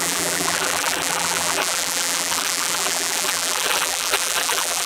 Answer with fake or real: fake